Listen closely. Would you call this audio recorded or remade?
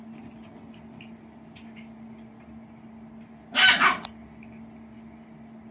recorded